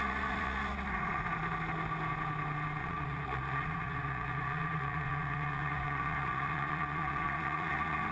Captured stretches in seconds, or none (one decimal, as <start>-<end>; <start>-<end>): 1.2-2.8